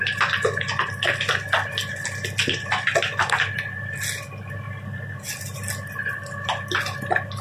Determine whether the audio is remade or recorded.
recorded